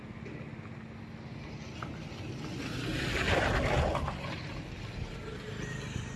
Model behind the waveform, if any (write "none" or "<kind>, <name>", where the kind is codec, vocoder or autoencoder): none